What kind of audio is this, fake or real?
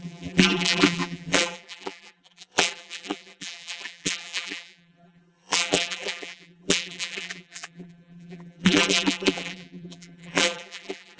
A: fake